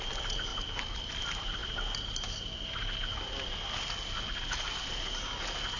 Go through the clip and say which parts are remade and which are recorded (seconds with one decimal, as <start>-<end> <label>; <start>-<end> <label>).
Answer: 0.0-0.5 recorded; 0.5-1.2 remade; 1.2-5.8 recorded